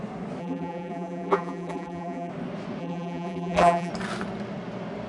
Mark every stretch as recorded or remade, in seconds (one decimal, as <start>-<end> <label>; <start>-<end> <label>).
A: 0.0-0.4 recorded; 0.4-2.3 remade; 2.3-2.8 recorded; 2.8-3.9 remade; 3.9-5.1 recorded